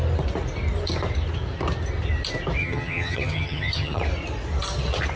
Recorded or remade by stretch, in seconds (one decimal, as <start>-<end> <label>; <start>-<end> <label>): 0.0-2.6 recorded; 2.6-4.0 remade; 4.0-5.2 recorded